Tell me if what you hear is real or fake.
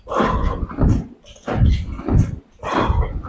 real